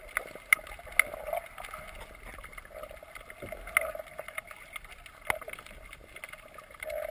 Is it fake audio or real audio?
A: real